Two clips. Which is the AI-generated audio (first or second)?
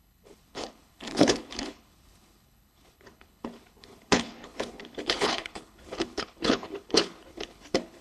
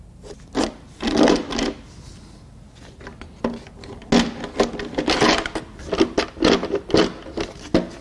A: first